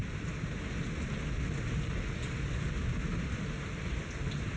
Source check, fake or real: real